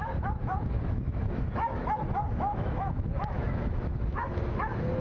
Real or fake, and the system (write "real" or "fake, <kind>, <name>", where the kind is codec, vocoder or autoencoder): fake, autoencoder, DAC-VAE